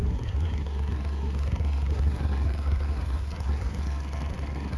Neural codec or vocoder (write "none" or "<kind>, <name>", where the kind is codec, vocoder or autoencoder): codec, SNAC